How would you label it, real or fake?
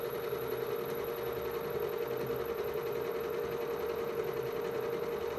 real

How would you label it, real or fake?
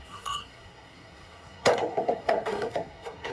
fake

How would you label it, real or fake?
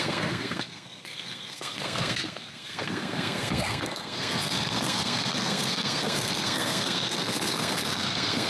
fake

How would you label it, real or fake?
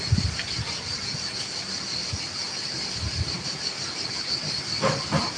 real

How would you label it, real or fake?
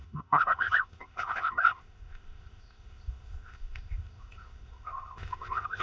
fake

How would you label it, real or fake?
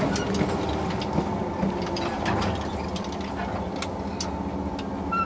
real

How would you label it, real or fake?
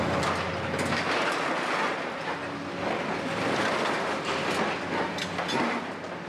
real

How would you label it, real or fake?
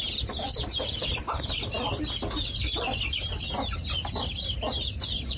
real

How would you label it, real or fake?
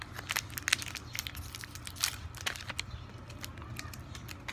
real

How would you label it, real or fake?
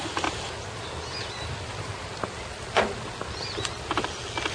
real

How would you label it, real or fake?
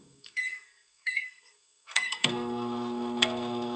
fake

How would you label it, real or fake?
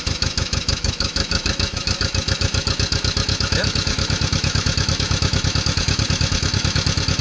fake